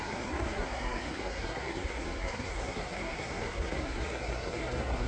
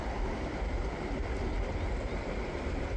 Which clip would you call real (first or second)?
second